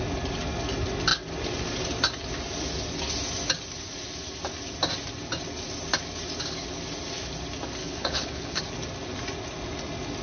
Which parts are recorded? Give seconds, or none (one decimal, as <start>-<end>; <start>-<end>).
0.0-7.8; 8.6-10.2